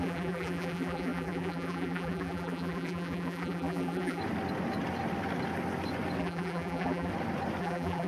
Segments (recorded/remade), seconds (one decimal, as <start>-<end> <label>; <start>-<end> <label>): 0.0-4.2 remade; 4.2-6.2 recorded; 6.2-7.1 remade; 7.1-7.6 recorded; 7.6-8.1 remade